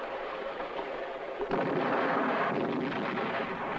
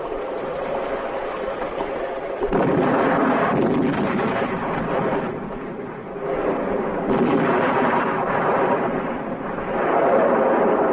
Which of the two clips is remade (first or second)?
second